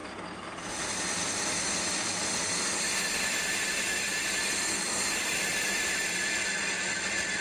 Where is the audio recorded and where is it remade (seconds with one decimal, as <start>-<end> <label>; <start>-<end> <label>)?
0.0-7.4 recorded